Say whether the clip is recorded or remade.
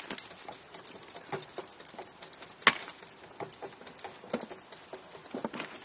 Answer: recorded